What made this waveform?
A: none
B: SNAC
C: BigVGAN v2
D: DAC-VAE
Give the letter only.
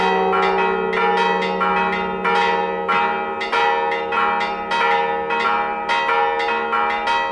A